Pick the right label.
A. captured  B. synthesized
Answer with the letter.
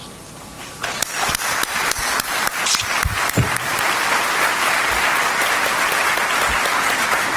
A